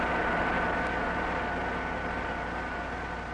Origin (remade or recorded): recorded